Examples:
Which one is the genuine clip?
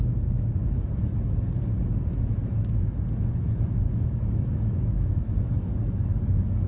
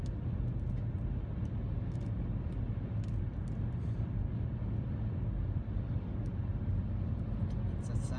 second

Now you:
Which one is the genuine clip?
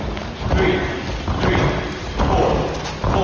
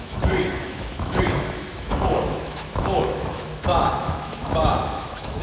first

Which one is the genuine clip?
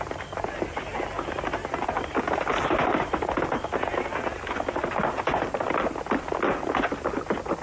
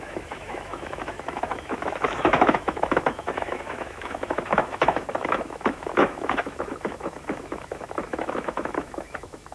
first